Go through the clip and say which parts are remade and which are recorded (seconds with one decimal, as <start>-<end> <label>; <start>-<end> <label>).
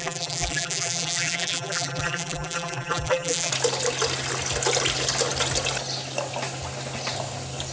0.0-3.5 remade; 3.5-7.7 recorded